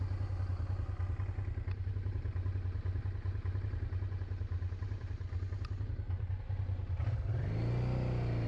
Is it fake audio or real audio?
real